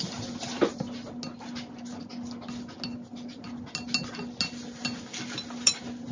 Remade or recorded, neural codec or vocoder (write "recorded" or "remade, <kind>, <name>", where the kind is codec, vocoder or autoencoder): recorded